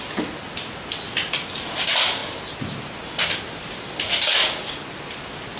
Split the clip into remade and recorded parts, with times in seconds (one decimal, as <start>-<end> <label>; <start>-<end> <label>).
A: 0.0-5.6 recorded